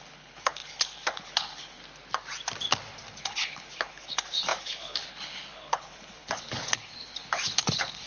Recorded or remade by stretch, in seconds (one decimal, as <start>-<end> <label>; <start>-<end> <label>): 0.0-1.8 remade; 1.8-3.2 recorded; 3.2-8.1 remade